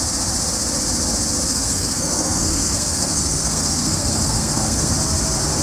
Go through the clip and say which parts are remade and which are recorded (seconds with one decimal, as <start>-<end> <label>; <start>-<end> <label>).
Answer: 0.0-1.5 recorded; 1.5-4.9 remade; 4.9-5.6 recorded